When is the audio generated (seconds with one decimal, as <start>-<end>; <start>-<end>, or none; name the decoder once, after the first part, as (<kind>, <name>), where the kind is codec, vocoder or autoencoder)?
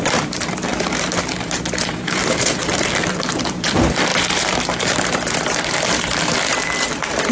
0.0-7.3 (vocoder, BigVGAN v2)